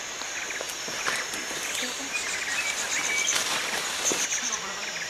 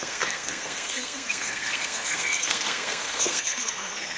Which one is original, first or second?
first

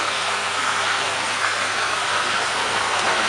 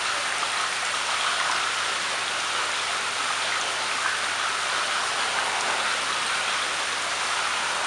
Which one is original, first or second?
second